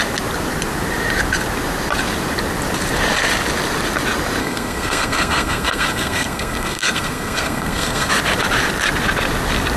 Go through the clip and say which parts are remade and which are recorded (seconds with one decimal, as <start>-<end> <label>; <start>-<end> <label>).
0.0-4.4 recorded; 4.4-8.1 remade; 8.1-9.8 recorded